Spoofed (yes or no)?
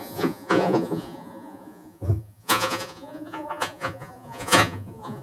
yes